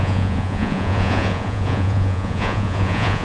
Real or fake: fake